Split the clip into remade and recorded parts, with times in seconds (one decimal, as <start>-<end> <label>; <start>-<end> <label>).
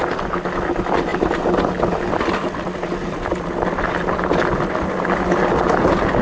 0.0-6.2 recorded